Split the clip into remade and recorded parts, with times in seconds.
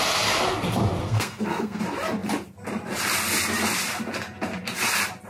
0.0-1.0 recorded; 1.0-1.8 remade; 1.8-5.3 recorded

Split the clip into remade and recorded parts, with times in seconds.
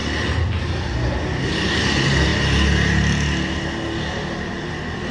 0.0-1.4 recorded; 1.4-2.3 remade; 2.3-4.1 recorded; 4.1-5.1 remade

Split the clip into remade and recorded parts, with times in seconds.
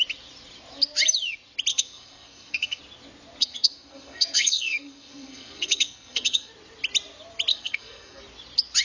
0.0-1.7 recorded; 1.7-2.8 remade; 2.8-3.4 recorded; 3.4-6.5 remade; 6.5-7.5 recorded; 7.5-8.2 remade; 8.2-8.8 recorded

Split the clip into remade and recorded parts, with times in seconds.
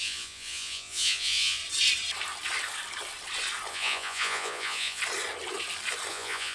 0.0-1.6 remade; 1.6-3.7 recorded; 3.7-5.0 remade; 5.0-6.1 recorded; 6.1-6.5 remade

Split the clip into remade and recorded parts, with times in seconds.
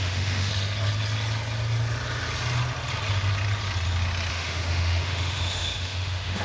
0.0-0.5 remade; 0.5-4.3 recorded; 4.3-6.4 remade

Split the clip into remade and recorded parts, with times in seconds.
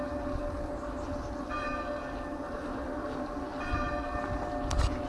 0.0-5.1 recorded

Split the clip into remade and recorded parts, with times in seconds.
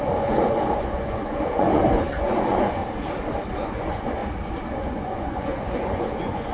0.0-2.8 remade; 2.8-3.6 recorded; 3.6-4.2 remade; 4.2-4.7 recorded; 4.7-6.5 remade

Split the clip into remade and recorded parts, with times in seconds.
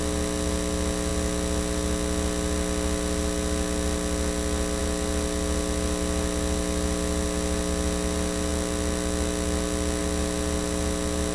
0.0-11.3 recorded